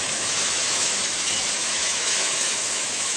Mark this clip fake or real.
fake